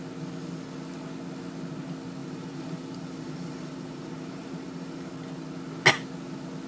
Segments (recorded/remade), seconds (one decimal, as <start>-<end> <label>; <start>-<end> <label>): 0.0-2.2 recorded; 2.2-5.1 remade; 5.1-6.7 recorded